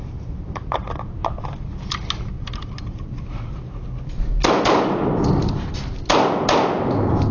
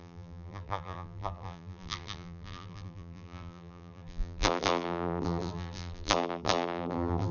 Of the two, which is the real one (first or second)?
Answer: first